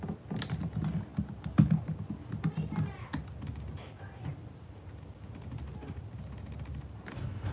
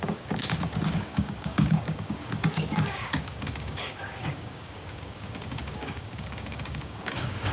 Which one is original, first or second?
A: first